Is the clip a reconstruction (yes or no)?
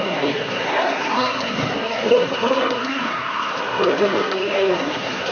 yes